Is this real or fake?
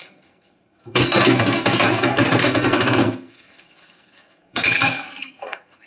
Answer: fake